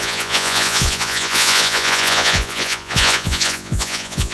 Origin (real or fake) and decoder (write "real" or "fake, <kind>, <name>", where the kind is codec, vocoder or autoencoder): fake, vocoder, Vocos